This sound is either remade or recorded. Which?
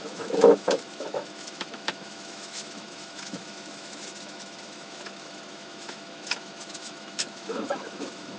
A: remade